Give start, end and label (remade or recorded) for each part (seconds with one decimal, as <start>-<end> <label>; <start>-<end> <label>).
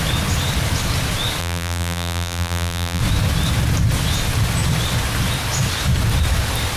0.0-1.4 recorded; 1.4-3.0 remade; 3.0-6.8 recorded